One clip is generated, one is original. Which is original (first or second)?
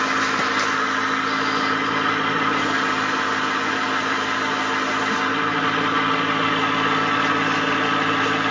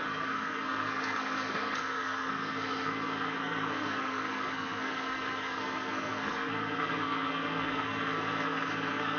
first